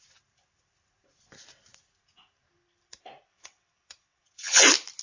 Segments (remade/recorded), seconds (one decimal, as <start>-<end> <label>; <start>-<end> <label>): 0.0-3.3 recorded; 3.3-4.6 remade; 4.6-5.0 recorded